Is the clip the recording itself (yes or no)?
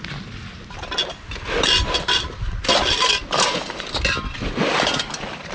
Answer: yes